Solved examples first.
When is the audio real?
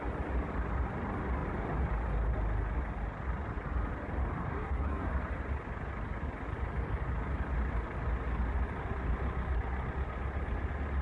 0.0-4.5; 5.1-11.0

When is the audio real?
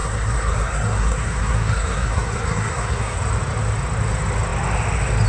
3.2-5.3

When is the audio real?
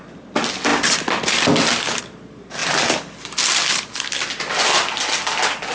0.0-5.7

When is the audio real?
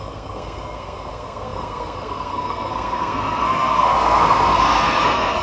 none